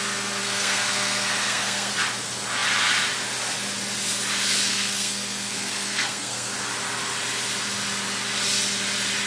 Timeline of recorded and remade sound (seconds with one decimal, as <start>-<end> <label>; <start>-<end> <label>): 0.0-0.4 recorded; 0.4-1.9 remade; 1.9-4.7 recorded; 4.7-6.5 remade; 6.5-9.3 recorded